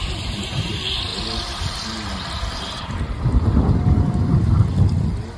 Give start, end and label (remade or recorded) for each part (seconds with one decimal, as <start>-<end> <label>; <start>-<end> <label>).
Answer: 0.0-5.4 recorded